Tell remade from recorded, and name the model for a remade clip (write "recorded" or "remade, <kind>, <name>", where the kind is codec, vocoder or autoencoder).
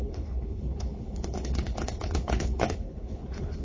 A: remade, codec, HILCodec